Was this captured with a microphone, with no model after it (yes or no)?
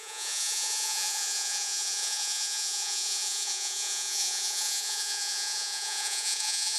no